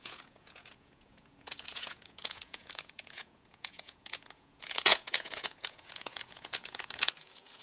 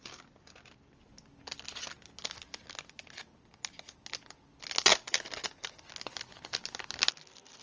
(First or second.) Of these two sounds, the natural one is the second